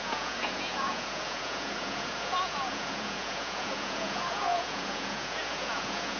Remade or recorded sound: remade